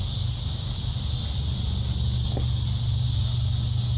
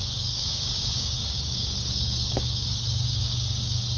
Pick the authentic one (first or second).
first